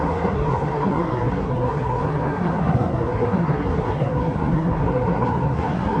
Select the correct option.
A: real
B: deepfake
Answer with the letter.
B